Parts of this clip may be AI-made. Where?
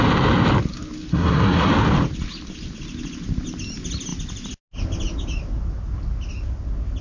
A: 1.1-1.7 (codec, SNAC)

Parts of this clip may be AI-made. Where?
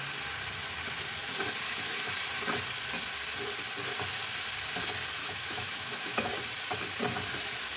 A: 5.2-6.3 (autoencoder, DAC-VAE)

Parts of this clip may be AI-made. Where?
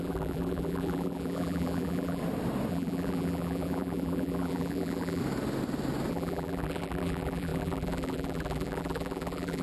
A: 0.0-2.2 (vocoder, BigVGAN v2); 2.7-5.2; 6.1-9.6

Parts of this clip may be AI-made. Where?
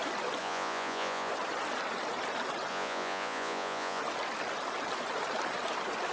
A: 0.4-1.3 (vocoder, Vocos); 2.7-4.0